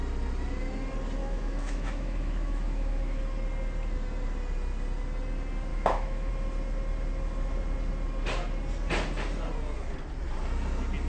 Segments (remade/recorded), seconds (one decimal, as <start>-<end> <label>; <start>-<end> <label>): 0.0-1.2 recorded; 1.2-3.2 remade; 3.2-5.7 recorded; 5.7-6.3 remade; 6.3-11.1 recorded